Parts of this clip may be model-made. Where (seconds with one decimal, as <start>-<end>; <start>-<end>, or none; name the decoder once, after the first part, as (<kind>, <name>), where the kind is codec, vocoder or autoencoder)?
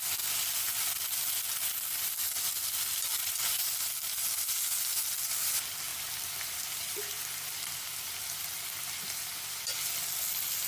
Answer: none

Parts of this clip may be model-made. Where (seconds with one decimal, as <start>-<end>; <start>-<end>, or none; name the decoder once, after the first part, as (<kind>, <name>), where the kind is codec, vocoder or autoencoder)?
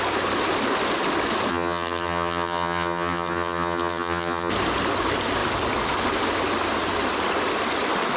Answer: 1.5-4.5 (vocoder, HiFi-GAN)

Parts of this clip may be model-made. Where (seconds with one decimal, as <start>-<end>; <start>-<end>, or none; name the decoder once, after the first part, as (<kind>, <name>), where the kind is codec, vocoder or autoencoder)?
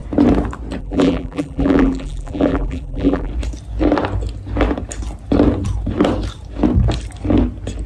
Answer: 0.8-3.3 (vocoder, BigVGAN v2)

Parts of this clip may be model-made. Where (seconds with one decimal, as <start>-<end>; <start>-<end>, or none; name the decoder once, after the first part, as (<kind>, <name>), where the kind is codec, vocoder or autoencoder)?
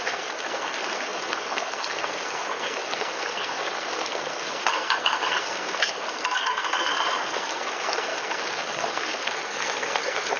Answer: 0.0-10.4 (codec, SNAC)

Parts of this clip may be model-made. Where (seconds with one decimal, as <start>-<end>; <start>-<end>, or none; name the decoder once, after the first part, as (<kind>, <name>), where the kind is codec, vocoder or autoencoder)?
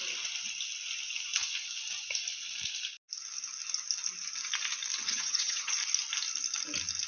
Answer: 5.0-5.7 (vocoder, HiFi-GAN)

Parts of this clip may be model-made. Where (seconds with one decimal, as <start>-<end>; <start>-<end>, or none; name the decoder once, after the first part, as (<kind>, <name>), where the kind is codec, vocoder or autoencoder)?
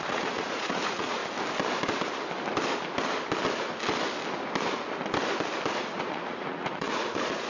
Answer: 0.0-1.2 (vocoder, Vocos); 5.7-7.5